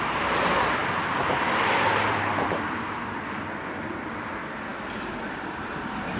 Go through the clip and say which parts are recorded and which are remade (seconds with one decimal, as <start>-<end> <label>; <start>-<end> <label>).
0.0-0.8 remade; 0.8-2.1 recorded; 2.1-6.2 remade

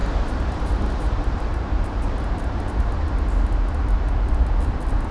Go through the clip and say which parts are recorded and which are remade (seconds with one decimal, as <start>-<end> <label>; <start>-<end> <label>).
0.0-3.1 remade; 3.1-5.1 recorded

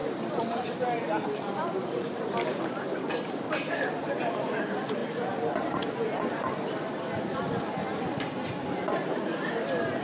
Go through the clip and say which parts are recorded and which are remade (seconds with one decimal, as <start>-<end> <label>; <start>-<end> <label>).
0.0-4.6 remade; 4.6-10.0 recorded

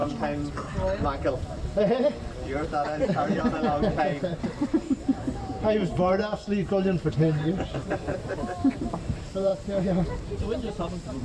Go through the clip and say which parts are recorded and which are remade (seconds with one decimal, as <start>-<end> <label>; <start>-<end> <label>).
0.0-4.2 recorded; 4.2-6.2 remade; 6.2-7.1 recorded; 7.1-9.5 remade; 9.5-10.6 recorded; 10.6-11.2 remade

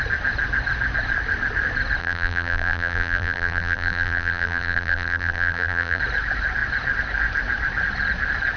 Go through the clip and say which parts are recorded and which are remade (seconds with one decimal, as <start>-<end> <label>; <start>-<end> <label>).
0.0-2.0 recorded; 2.0-6.0 remade; 6.0-8.6 recorded

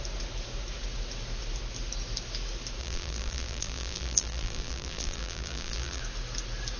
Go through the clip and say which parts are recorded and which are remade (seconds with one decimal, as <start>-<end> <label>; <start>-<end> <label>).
0.0-2.8 recorded; 2.8-6.0 remade; 6.0-6.8 recorded